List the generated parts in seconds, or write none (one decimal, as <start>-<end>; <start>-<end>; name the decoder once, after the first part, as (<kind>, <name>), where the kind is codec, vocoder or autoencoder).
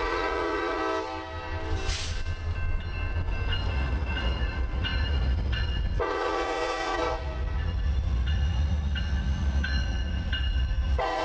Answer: 0.0-0.8 (vocoder, Vocos); 3.7-11.2